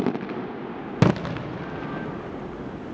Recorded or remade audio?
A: recorded